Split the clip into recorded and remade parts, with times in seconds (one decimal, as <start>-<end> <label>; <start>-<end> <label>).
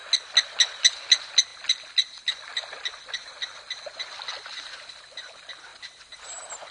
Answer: 0.0-0.5 recorded; 0.5-5.7 remade; 5.7-6.7 recorded